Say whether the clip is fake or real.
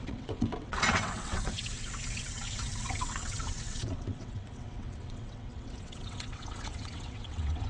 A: fake